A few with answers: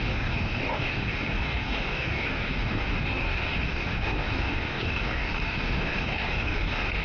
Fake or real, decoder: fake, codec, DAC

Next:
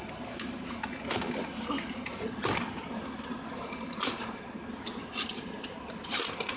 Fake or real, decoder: real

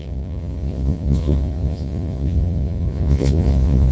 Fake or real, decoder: fake, vocoder, Vocos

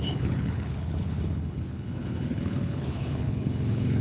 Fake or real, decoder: fake, codec, HILCodec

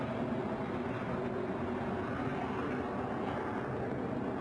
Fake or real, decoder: real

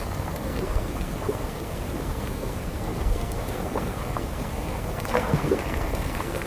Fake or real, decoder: fake, codec, SNAC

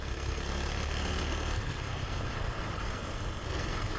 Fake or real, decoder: fake, codec, SNAC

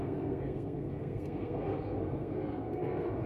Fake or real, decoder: fake, codec, SNAC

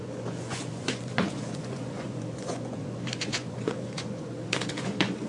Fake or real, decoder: fake, vocoder, Vocos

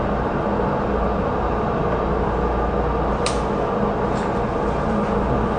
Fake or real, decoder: real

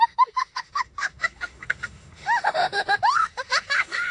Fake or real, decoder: fake, autoencoder, DAC-VAE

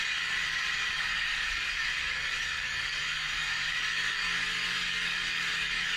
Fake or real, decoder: fake, codec, DAC